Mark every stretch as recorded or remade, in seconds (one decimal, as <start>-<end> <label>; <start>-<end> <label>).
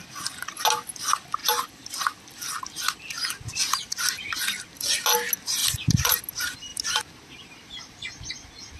0.0-1.4 recorded; 1.4-2.0 remade; 2.0-5.6 recorded; 5.6-6.2 remade; 6.2-8.8 recorded